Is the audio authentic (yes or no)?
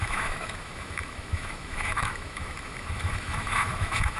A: no